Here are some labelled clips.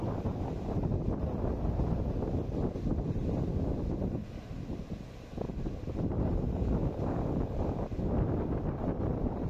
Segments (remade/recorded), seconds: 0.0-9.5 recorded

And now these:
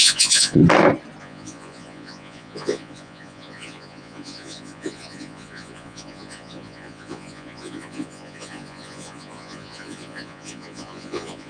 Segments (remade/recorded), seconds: 0.0-0.6 remade; 0.6-1.2 recorded; 1.2-11.5 remade

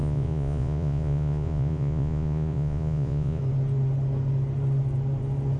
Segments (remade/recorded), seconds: 0.0-3.4 remade; 3.4-5.6 recorded

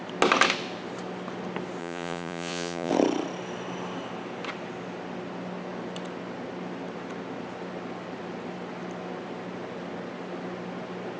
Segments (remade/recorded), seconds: 0.0-1.8 recorded; 1.8-2.9 remade; 2.9-11.2 recorded

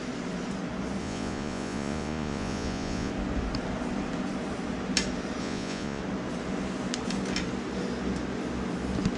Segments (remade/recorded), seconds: 0.0-1.0 recorded; 1.0-3.1 remade; 3.1-5.4 recorded; 5.4-6.0 remade; 6.0-9.2 recorded